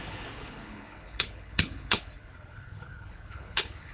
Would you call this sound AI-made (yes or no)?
yes